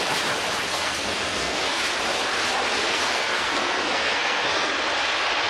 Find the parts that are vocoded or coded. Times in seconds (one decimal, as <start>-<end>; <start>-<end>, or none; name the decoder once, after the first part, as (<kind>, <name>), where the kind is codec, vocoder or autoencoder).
0.7-1.8 (codec, SNAC); 2.9-4.7